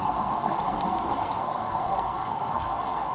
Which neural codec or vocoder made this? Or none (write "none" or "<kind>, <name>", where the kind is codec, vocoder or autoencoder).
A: codec, SNAC